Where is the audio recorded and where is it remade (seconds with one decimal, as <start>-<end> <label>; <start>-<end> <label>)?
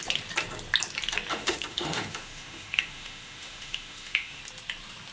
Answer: 0.0-1.3 recorded; 1.3-4.4 remade; 4.4-5.1 recorded